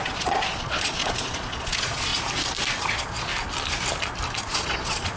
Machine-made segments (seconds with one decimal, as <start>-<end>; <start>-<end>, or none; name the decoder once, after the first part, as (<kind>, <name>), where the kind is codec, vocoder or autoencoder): 0.0-2.1 (vocoder, Vocos); 2.8-3.3; 4.4-5.2